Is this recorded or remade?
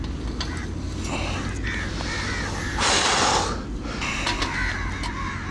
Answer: recorded